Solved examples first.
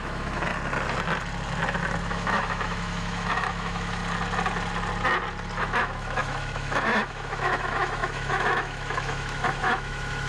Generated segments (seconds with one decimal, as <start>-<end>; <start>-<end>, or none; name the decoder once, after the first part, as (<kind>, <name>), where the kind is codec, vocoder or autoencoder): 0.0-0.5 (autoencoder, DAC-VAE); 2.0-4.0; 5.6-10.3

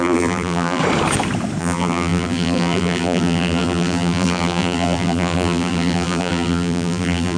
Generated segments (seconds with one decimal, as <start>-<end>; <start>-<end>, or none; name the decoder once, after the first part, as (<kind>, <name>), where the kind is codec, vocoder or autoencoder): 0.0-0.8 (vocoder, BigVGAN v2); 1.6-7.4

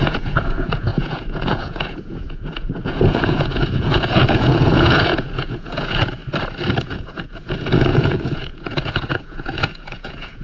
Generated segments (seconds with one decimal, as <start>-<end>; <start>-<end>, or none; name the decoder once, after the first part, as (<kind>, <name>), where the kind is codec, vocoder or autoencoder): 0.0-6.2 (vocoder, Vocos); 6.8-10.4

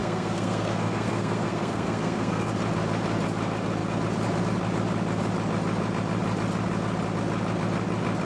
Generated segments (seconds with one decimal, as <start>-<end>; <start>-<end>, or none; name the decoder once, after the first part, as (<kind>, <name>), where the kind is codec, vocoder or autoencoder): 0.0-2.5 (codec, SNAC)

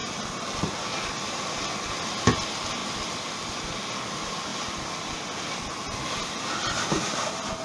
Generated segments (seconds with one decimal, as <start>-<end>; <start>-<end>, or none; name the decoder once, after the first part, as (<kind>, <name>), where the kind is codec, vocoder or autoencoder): 2.8-3.5 (vocoder, BigVGAN v2); 4.5-6.1